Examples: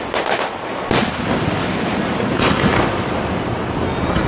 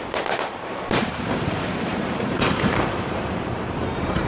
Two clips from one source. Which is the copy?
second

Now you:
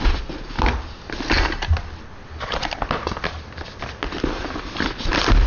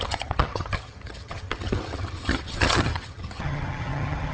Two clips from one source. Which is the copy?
second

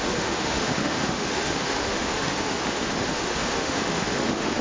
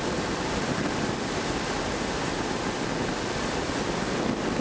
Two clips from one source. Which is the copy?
first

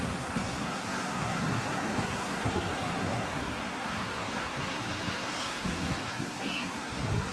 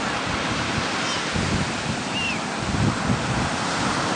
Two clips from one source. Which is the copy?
first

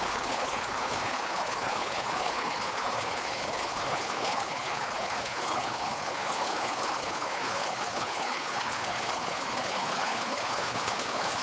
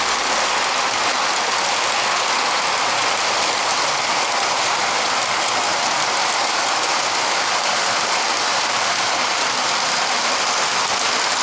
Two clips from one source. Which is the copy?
first